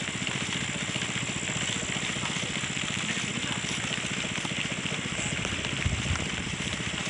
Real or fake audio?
real